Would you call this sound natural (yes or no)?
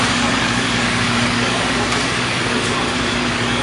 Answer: no